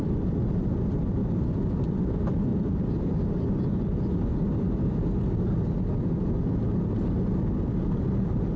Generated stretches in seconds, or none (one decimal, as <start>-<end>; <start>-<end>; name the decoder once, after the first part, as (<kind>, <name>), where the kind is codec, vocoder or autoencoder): 0.0-1.2 (vocoder, BigVGAN v2); 1.9-2.5; 3.8-4.3